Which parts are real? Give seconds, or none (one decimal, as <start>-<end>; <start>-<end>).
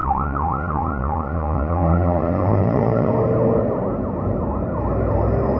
3.1-5.6